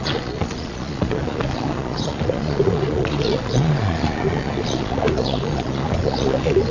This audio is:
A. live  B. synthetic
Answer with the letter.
B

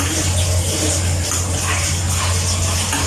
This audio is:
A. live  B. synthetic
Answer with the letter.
A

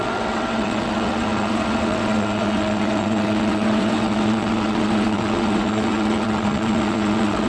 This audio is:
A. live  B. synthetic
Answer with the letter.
B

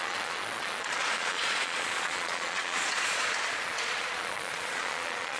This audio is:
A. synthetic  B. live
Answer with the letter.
A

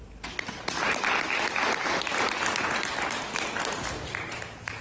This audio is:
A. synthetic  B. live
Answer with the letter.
B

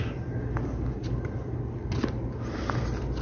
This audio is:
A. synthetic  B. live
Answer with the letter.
B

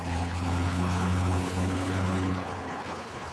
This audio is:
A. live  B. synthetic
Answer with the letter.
B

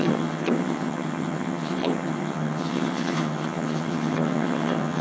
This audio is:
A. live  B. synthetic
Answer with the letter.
B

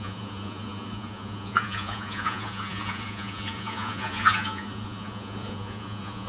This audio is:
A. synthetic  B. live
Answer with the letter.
A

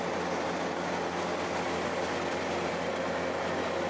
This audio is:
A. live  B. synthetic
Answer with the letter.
A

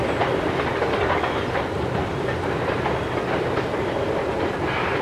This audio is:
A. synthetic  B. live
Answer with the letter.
B